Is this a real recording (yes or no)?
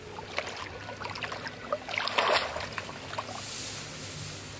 yes